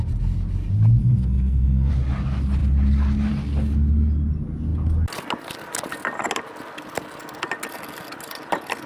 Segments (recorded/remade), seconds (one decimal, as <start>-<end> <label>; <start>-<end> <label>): 0.0-1.0 recorded; 1.0-1.9 remade; 1.9-8.9 recorded